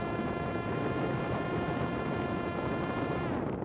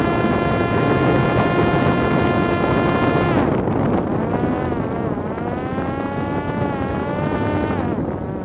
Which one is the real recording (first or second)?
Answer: second